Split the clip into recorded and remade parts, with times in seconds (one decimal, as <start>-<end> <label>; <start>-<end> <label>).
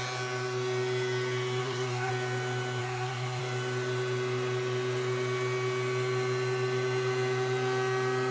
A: 0.0-1.6 recorded; 1.6-2.1 remade; 2.1-2.8 recorded; 2.8-3.4 remade; 3.4-8.3 recorded